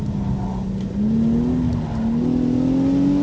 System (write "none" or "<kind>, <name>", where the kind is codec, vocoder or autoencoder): none